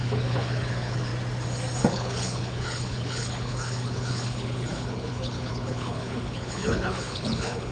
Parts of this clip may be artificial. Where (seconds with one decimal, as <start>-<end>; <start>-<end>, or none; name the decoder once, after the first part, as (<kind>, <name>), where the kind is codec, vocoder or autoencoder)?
0.0-1.1 (codec, HILCodec); 1.8-7.7